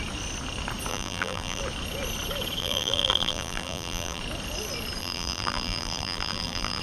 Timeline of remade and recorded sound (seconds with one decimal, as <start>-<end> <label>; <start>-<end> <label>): 0.0-0.9 recorded; 0.9-1.6 remade; 1.6-2.6 recorded; 2.6-4.2 remade; 4.2-5.0 recorded; 5.0-6.8 remade